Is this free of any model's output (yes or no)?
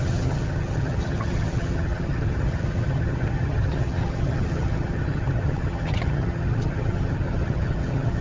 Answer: no